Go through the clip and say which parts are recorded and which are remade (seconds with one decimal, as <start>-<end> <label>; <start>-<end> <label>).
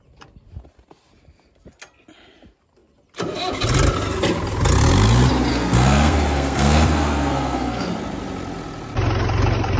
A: 0.0-5.5 recorded; 5.5-7.9 remade; 7.9-9.8 recorded